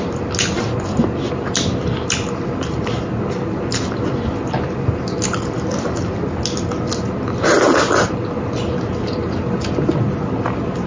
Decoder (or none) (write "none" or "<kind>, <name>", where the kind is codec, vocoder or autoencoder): none